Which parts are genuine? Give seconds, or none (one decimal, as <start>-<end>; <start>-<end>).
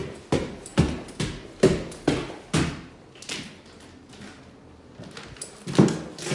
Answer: 0.0-6.3